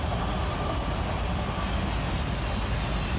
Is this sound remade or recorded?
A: recorded